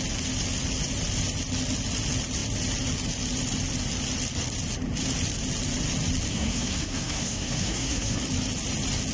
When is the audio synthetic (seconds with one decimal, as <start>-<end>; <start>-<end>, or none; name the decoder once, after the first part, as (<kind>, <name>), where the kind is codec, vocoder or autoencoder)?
6.3-8.2 (codec, SNAC)